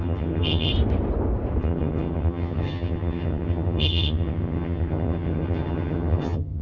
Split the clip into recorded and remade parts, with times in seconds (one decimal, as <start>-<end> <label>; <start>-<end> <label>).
0.0-0.7 remade; 0.7-1.6 recorded; 1.6-6.6 remade